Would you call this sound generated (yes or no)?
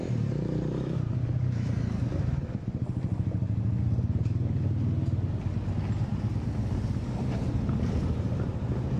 no